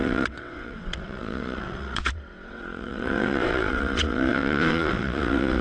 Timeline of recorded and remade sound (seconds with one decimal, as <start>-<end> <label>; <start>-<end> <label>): 0.0-5.6 remade